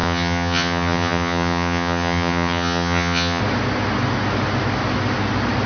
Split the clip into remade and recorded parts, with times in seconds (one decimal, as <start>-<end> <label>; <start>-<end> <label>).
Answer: 0.0-3.4 remade; 3.4-5.7 recorded